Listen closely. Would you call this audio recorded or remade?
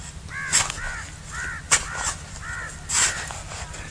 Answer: recorded